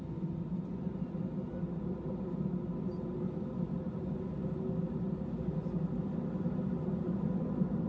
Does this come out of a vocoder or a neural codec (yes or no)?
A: no